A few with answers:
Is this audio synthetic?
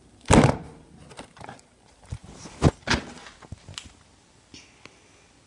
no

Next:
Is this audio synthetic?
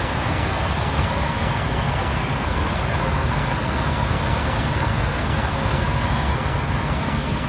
yes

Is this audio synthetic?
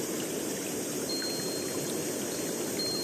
no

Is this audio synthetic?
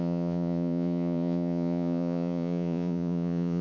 yes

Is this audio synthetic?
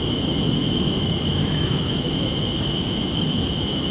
yes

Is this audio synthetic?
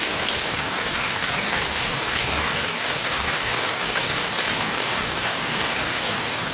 yes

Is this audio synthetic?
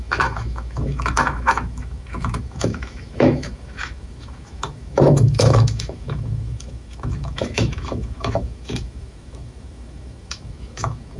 yes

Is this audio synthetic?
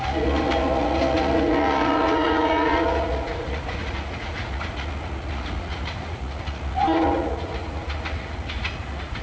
yes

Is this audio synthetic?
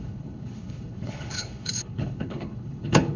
yes